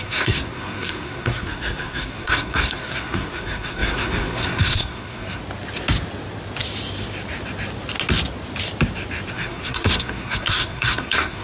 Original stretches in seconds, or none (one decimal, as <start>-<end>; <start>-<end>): 5.4-9.3